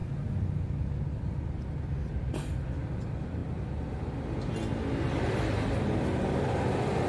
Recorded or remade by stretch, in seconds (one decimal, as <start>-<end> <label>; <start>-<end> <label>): 0.0-3.4 recorded; 3.4-3.9 remade; 3.9-7.1 recorded